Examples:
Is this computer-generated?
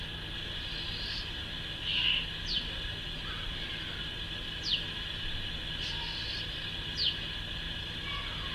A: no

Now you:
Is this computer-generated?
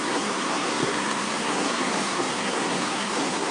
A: yes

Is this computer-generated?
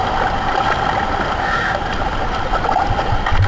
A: no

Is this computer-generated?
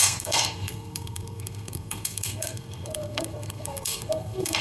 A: yes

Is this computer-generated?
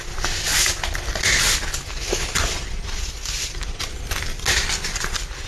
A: no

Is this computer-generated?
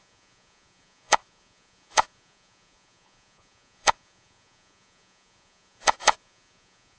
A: yes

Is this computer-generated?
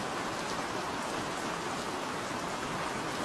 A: no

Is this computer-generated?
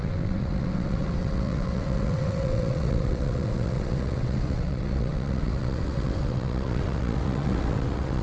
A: yes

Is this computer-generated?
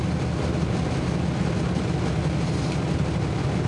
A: no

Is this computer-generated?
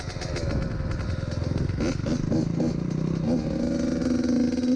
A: no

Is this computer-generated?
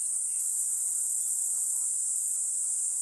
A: no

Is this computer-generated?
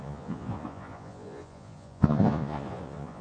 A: yes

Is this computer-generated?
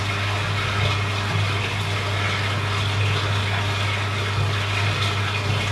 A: no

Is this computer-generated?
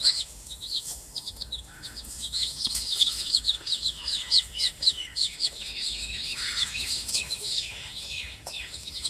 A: yes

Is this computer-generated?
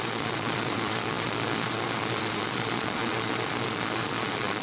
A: yes